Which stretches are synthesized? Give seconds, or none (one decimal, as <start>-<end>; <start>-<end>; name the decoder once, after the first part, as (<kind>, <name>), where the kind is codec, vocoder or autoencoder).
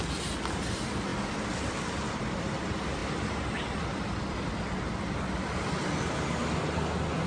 3.0-5.4 (vocoder, BigVGAN v2)